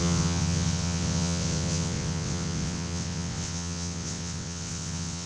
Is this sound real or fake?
fake